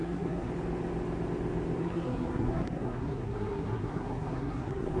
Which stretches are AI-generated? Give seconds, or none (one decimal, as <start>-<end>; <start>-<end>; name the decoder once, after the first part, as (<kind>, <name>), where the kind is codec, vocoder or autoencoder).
0.0-0.5 (codec, SNAC); 1.8-5.0